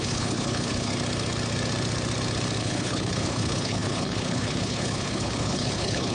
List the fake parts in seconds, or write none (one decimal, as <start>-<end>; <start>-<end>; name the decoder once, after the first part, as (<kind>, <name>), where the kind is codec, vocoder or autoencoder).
0.0-0.9 (codec, HILCodec); 2.6-6.1